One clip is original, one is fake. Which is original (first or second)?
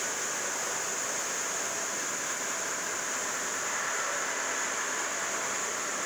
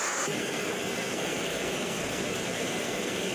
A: first